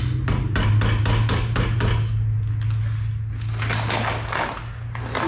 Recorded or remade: recorded